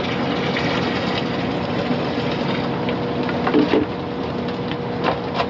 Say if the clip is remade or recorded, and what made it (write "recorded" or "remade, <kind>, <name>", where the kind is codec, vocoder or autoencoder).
recorded